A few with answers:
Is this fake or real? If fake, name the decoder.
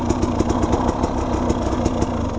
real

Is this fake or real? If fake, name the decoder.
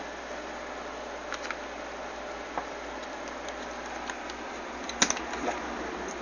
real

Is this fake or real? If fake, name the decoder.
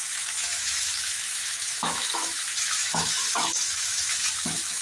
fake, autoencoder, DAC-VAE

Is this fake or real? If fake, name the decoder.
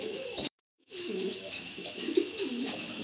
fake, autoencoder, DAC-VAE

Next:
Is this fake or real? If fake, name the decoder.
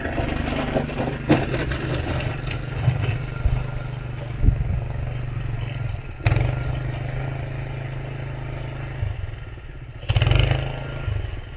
real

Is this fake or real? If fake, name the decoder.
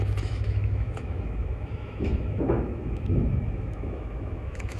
fake, autoencoder, DAC-VAE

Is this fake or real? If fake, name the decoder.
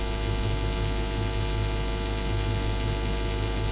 real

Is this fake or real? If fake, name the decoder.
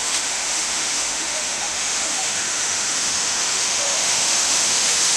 fake, autoencoder, DAC-VAE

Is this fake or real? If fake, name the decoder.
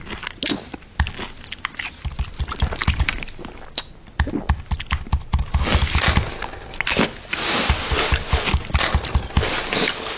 real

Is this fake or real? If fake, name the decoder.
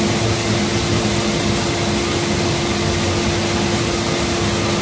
real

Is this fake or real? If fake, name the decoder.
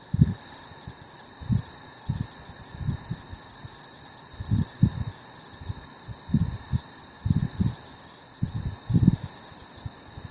real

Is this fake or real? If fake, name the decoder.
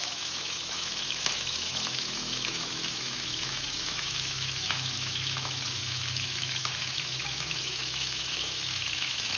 fake, autoencoder, DAC-VAE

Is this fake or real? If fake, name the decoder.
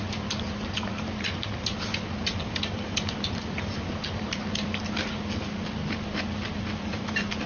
real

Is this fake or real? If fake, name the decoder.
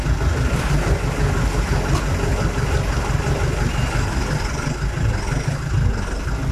real